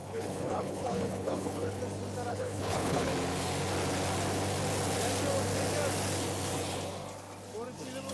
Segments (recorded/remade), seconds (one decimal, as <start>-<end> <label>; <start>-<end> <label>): 0.0-1.8 remade; 1.8-2.3 recorded; 2.3-3.1 remade; 3.1-8.1 recorded